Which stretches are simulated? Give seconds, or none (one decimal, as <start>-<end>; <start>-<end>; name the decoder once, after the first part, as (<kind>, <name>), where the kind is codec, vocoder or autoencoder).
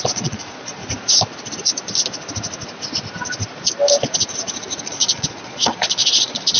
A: 0.0-0.8 (vocoder, Vocos); 4.8-6.6